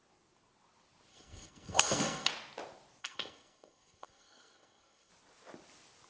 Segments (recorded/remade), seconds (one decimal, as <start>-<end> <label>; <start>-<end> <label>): 0.0-1.1 recorded; 1.1-2.3 remade; 2.3-3.0 recorded; 3.0-5.1 remade; 5.1-6.1 recorded